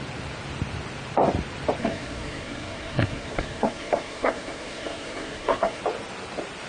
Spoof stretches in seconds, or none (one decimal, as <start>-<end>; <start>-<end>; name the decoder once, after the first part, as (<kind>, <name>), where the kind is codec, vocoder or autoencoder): 1.8-5.8 (codec, SNAC)